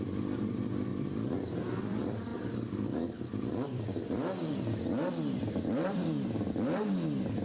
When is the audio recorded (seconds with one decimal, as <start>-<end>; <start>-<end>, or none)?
none